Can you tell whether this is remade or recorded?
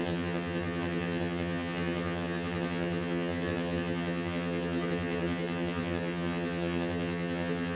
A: remade